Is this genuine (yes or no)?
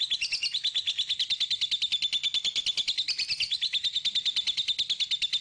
yes